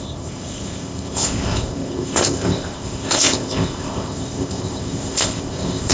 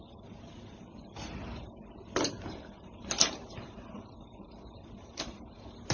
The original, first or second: second